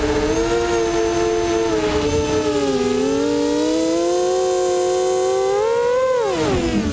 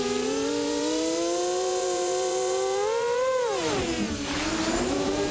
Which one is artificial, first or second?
second